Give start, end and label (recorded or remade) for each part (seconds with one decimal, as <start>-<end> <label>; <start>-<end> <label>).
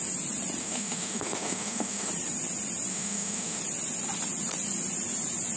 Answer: 0.0-0.6 recorded; 0.6-2.1 remade; 2.1-2.9 recorded; 2.9-3.6 remade; 3.6-5.6 recorded